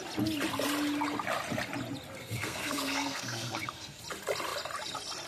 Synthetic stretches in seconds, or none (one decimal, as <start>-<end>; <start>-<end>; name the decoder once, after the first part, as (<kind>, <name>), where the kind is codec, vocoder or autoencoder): 2.2-4.0 (codec, SNAC)